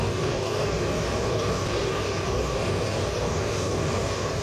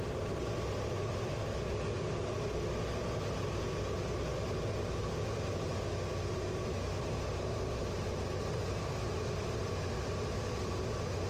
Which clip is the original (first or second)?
second